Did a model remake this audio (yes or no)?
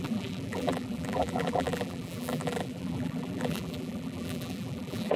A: yes